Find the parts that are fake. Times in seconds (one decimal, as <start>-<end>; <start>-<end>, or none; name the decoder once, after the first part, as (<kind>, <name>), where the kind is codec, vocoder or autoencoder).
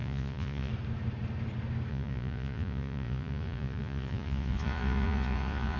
0.0-0.7 (vocoder, Vocos); 1.9-5.8